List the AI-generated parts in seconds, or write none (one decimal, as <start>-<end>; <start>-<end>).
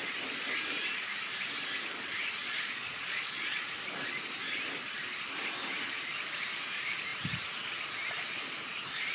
2.4-3.7